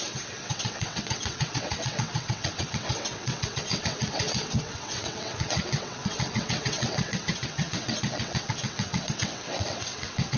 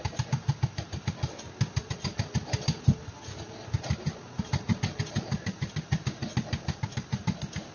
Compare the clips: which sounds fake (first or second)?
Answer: first